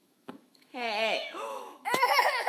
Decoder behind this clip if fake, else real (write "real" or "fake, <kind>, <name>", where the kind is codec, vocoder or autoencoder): fake, autoencoder, DAC-VAE